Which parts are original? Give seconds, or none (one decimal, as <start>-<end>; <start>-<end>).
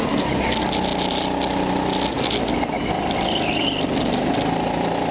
0.0-5.1